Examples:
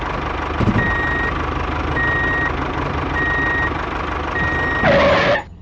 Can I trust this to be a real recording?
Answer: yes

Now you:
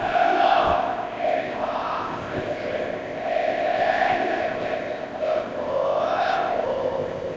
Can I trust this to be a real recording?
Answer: no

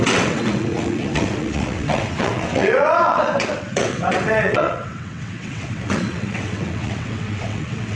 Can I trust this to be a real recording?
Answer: no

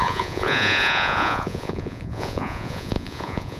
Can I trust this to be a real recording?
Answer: no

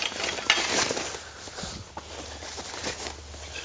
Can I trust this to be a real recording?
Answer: yes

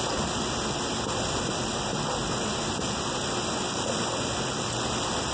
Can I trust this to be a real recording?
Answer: yes